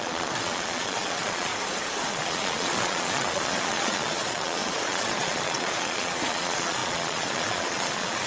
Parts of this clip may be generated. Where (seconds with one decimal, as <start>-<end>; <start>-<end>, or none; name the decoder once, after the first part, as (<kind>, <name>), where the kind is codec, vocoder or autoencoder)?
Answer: 0.0-1.5 (vocoder, Vocos); 2.1-8.3